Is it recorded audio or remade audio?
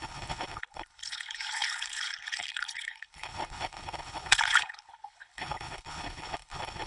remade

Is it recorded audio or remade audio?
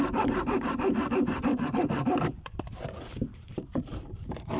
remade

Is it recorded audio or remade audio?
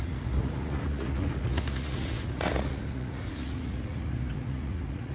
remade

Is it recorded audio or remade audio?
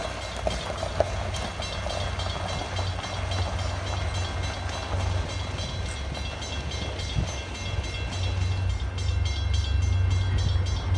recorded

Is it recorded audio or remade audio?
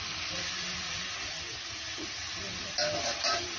remade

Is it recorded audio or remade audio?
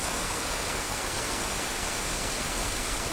remade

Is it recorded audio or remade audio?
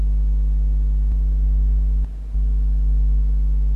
recorded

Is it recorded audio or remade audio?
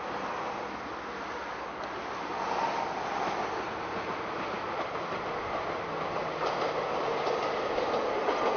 recorded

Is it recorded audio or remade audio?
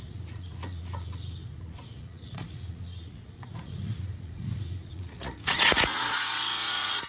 remade